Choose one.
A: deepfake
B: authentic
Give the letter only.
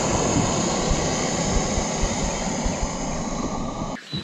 B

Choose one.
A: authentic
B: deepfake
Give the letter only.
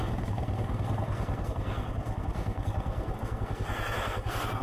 B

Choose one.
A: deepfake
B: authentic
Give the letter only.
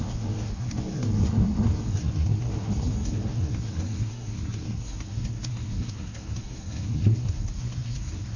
A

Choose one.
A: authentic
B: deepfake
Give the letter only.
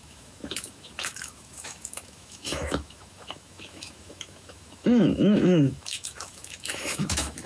B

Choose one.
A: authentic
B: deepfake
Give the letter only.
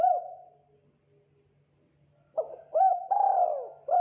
A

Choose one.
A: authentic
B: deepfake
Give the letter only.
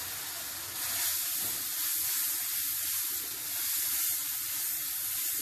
A